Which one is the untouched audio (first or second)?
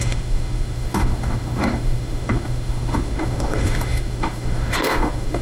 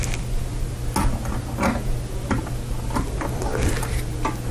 second